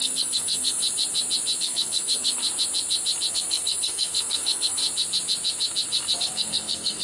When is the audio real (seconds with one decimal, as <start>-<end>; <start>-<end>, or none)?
0.8-1.6; 2.4-3.3; 4.8-6.2